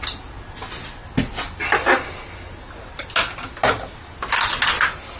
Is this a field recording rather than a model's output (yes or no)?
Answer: yes